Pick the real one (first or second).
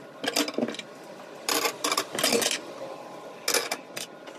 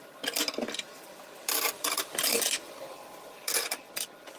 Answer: first